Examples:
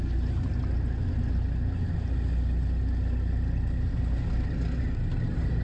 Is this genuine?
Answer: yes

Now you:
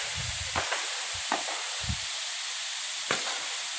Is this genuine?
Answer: yes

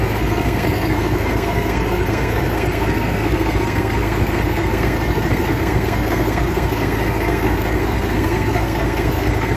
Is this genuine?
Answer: no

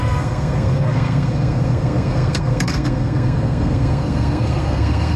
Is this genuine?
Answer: no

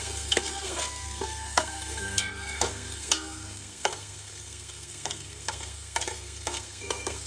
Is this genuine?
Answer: no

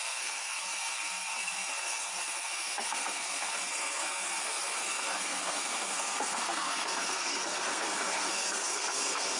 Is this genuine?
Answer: no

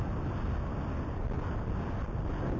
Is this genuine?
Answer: yes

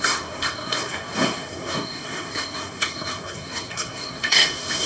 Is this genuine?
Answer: no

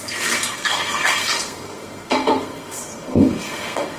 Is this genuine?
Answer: no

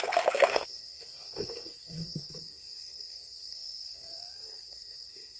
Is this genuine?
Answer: no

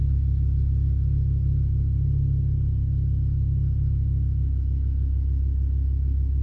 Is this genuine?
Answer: yes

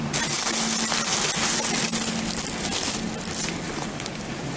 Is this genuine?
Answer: yes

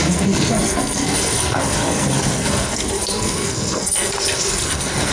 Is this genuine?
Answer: no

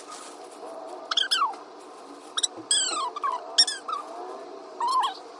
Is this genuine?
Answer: yes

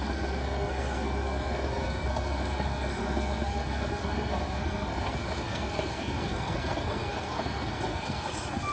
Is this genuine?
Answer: no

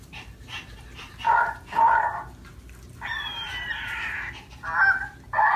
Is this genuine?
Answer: yes